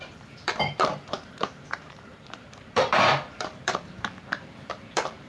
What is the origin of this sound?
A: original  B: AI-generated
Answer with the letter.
B